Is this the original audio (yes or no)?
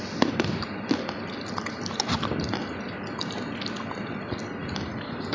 yes